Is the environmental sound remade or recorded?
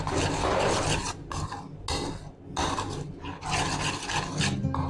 recorded